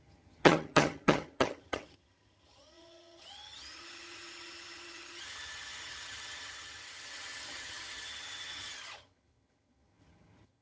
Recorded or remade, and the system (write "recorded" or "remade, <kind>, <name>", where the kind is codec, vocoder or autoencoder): remade, vocoder, HiFi-GAN